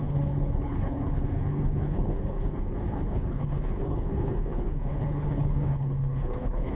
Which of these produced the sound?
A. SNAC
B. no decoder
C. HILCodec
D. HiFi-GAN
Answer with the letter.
C